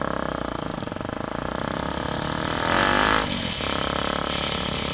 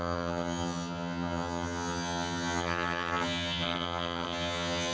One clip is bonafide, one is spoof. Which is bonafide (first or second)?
first